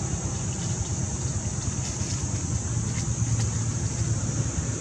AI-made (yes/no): no